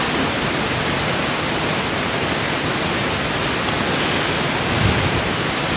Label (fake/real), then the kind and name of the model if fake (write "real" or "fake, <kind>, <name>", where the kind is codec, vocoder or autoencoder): real